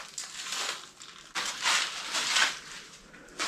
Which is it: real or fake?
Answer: real